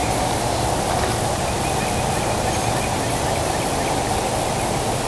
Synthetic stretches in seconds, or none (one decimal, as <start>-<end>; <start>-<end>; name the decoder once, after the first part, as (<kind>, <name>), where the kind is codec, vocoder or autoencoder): none